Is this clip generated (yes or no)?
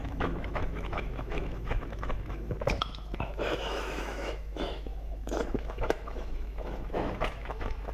yes